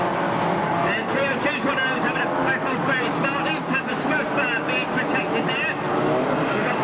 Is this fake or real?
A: real